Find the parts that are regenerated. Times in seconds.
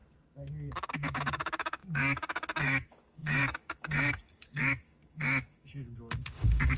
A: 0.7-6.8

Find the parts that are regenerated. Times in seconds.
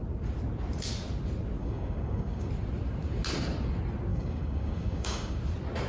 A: 1.6-2.5; 4.1-5.4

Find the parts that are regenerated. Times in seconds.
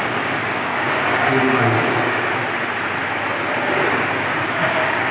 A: 0.0-2.4; 4.0-5.1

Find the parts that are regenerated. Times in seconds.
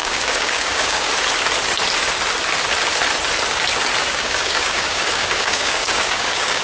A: 0.0-1.1; 4.0-6.6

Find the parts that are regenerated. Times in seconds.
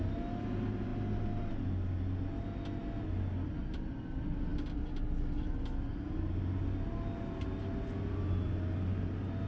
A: none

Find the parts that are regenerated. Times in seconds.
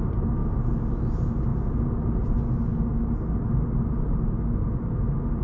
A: none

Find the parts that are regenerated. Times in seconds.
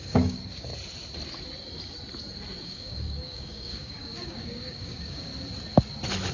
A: 0.0-0.7; 2.6-5.3